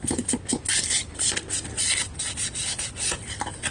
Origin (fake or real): real